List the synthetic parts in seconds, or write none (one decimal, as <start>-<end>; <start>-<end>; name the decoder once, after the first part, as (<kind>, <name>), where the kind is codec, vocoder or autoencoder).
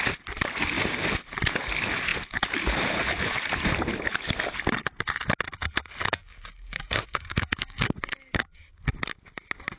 6.2-8.6 (codec, DAC)